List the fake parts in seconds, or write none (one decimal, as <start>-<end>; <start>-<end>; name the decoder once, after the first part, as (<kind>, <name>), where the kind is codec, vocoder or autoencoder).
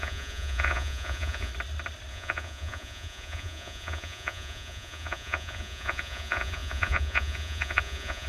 0.0-1.5 (vocoder, Vocos); 2.1-8.3